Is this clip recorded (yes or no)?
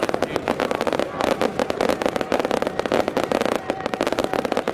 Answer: yes